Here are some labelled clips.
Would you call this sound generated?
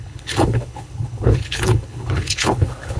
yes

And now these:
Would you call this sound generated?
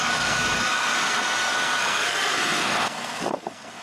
yes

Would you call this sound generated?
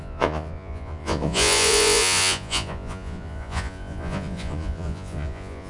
yes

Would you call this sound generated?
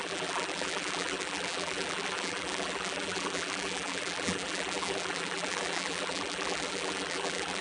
yes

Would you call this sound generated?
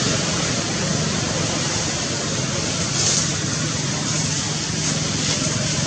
no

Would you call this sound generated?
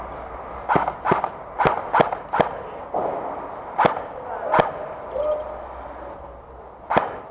no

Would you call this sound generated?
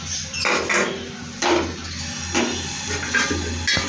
no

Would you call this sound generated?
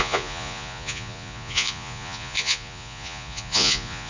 yes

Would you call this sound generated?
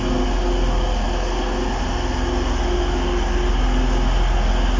no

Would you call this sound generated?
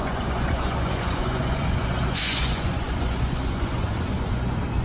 yes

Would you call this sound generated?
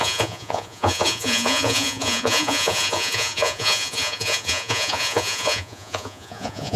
yes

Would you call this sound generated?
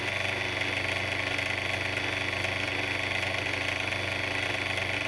no